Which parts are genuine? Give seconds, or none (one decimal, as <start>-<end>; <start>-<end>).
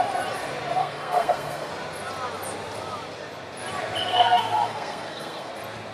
0.0-0.8; 1.7-4.1; 5.5-5.9